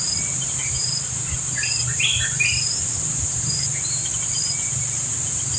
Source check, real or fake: fake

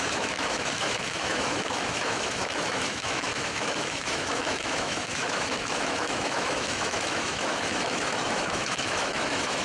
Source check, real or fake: fake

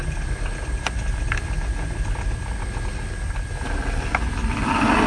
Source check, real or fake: real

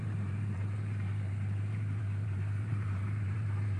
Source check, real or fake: fake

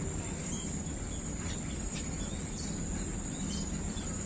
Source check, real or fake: real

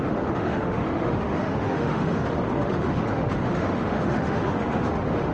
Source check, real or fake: fake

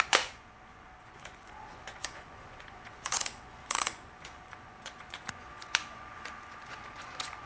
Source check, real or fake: fake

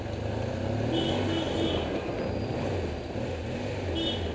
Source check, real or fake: real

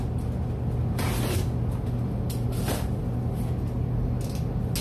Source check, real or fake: real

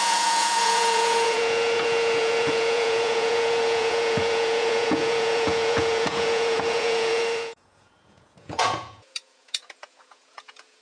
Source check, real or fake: fake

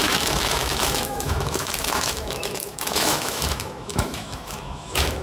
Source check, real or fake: fake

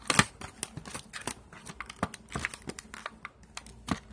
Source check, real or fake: real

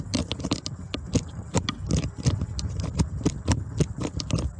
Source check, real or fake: real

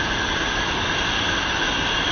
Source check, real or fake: real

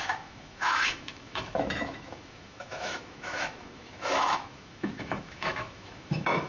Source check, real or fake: fake